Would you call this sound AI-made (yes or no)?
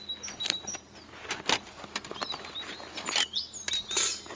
no